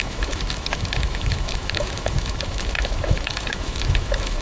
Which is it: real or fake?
fake